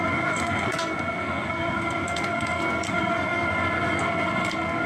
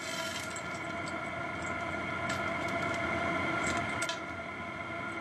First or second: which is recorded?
second